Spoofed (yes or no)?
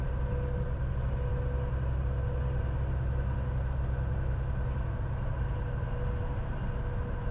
no